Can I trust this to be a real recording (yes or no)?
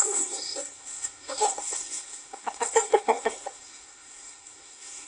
no